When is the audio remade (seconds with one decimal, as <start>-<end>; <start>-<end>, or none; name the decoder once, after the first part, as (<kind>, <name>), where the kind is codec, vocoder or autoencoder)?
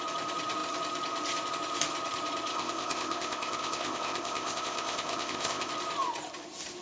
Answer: 2.5-5.7 (codec, ZipCodec)